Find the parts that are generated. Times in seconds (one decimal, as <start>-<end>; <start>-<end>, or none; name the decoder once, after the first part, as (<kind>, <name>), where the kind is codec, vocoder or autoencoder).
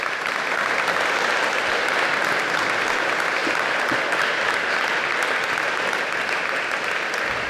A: none